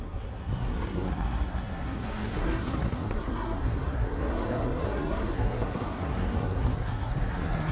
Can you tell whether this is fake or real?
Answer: fake